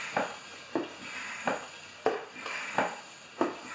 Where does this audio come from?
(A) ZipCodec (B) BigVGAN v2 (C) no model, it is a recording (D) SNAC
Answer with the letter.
C